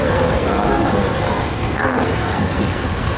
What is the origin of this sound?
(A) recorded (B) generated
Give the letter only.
B